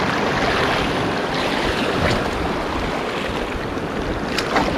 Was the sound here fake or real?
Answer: real